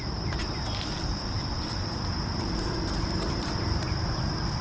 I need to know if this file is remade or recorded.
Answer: remade